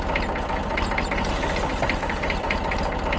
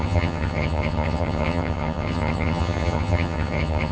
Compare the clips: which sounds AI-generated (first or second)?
second